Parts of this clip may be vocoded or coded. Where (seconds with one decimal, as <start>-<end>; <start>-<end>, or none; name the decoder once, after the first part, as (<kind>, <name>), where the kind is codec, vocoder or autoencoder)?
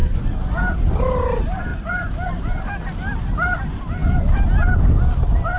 none